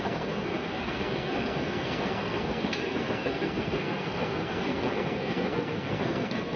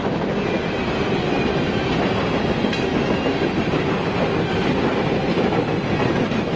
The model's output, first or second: first